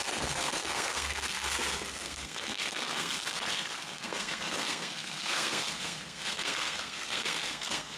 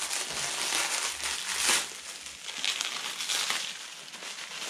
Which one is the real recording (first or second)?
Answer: second